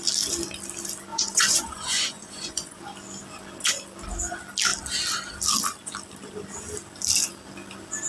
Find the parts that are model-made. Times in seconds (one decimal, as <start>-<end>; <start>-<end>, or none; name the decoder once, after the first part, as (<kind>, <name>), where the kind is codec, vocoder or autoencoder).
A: 1.1-2.8 (vocoder, Vocos)